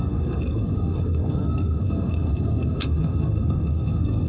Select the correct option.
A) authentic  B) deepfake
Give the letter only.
B